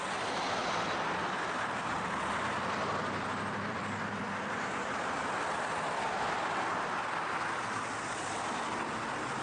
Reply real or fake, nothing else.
fake